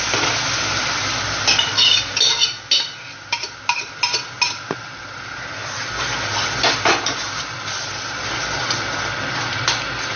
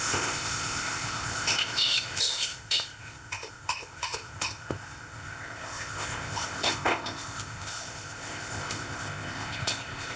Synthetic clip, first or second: second